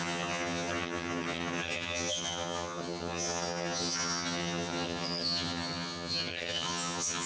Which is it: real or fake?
fake